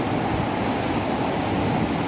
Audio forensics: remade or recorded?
recorded